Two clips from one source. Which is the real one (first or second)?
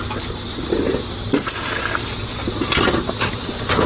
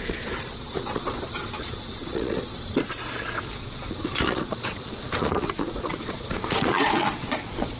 first